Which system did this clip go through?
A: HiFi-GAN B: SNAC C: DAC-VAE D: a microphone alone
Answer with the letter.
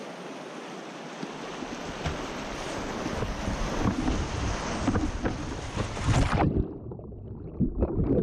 D